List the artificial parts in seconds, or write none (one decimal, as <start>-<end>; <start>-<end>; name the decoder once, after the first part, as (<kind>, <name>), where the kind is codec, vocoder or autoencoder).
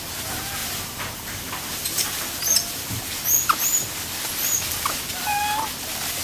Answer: 0.6-3.0 (vocoder, BigVGAN v2)